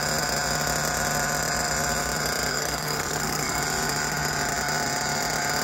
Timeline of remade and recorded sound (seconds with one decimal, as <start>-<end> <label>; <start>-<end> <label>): 0.0-2.5 recorded; 2.5-3.6 remade; 3.6-5.6 recorded